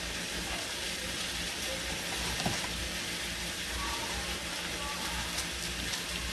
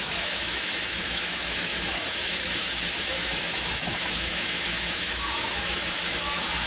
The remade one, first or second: second